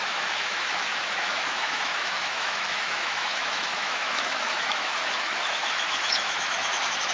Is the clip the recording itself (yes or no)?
no